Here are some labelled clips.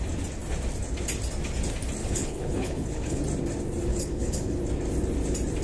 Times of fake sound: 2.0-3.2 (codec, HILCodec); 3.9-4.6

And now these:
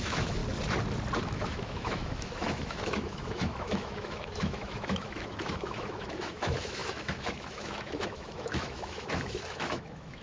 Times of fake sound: 0.0-0.4 (autoencoder, DAC-VAE); 1.2-10.2

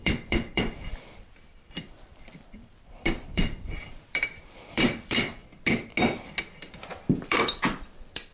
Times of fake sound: 0.0-5.4 (vocoder, BigVGAN v2); 7.1-8.3

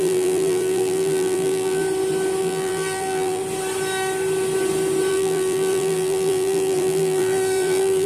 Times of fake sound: 0.0-1.8 (vocoder, BigVGAN v2); 2.4-3.4; 5.1-8.1

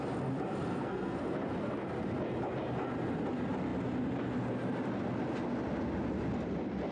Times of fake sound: 0.7-1.2 (codec, SNAC)